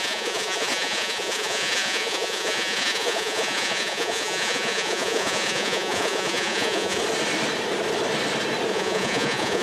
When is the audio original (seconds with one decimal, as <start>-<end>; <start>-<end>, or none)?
7.0-8.7